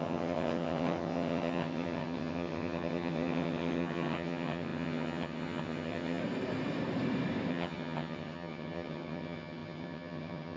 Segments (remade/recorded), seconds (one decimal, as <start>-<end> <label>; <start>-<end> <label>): 0.0-6.2 remade; 6.2-7.5 recorded; 7.5-10.6 remade